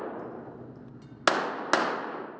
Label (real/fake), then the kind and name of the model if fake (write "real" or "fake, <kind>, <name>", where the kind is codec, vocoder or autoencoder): real